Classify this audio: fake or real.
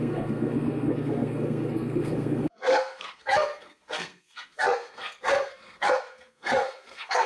fake